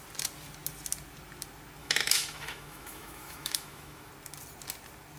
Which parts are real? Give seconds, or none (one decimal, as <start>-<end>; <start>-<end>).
0.0-1.8; 4.1-5.2